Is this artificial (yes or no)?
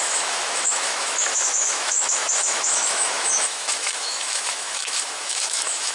yes